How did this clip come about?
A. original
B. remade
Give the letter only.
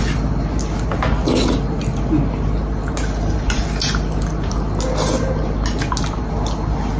A